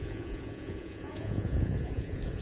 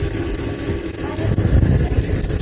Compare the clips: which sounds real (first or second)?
second